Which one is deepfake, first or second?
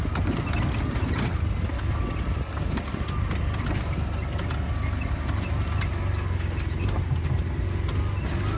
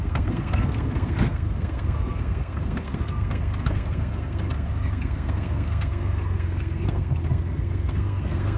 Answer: second